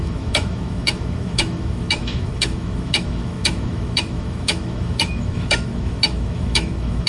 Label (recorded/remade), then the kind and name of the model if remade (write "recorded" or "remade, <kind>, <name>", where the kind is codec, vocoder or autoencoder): remade, autoencoder, DAC-VAE